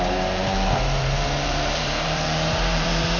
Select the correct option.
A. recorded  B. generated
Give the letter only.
B